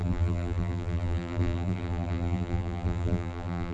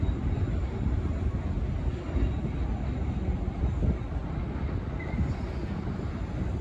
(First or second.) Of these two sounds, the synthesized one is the first